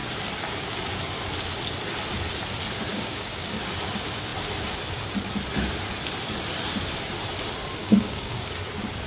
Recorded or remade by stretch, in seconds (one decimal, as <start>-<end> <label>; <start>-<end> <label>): 0.0-2.9 recorded; 2.9-3.6 remade; 3.6-7.8 recorded; 7.8-8.5 remade; 8.5-9.1 recorded